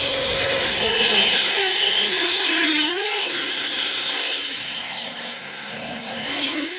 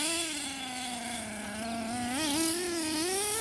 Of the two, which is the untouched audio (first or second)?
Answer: second